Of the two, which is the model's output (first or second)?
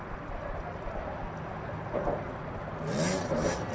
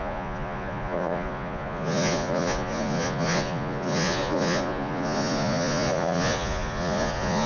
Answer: second